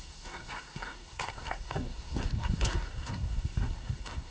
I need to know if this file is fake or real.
fake